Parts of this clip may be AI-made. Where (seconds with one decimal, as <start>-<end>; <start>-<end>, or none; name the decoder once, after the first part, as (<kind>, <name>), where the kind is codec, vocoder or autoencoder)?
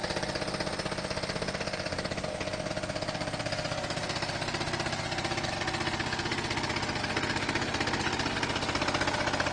none